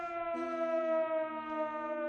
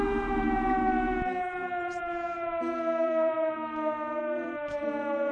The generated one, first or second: second